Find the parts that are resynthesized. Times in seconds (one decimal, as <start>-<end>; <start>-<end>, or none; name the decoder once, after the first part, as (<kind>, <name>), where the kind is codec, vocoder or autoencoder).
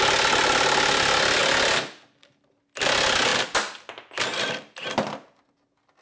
none